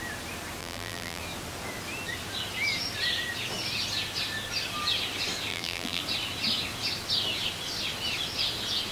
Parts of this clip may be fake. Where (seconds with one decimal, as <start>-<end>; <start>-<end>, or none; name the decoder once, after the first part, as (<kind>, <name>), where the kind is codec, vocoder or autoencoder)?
0.6-1.2 (vocoder, BigVGAN v2); 5.5-6.0